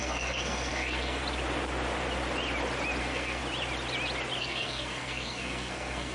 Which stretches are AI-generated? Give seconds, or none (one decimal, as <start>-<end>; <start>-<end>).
0.0-1.2; 3.0-3.4; 4.4-6.1